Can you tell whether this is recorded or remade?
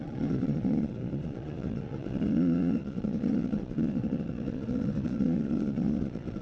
remade